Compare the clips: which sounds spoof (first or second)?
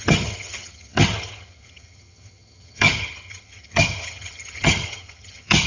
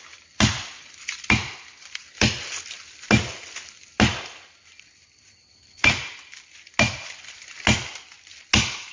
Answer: first